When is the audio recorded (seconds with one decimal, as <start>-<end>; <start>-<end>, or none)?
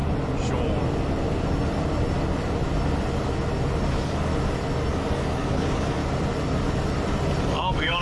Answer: 0.0-3.9; 4.3-4.9; 6.0-7.4